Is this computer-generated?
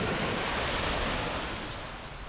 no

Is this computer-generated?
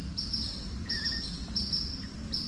no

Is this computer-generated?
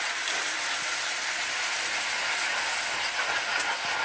no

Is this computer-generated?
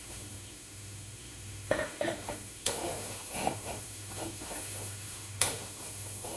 yes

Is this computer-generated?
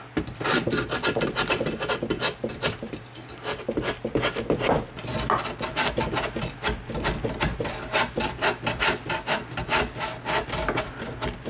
no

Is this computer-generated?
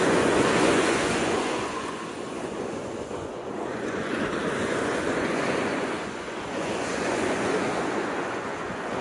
yes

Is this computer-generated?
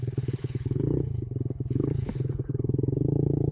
yes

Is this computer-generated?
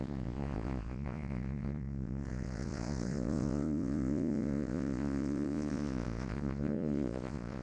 yes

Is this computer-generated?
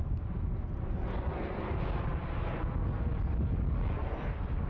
no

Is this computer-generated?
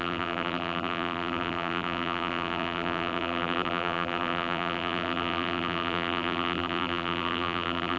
yes